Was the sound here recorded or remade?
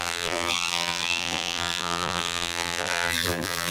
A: remade